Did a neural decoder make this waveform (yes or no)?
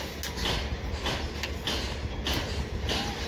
no